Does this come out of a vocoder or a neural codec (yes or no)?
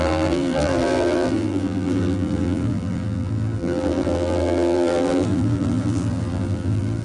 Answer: yes